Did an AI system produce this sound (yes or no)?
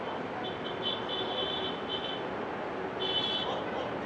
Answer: no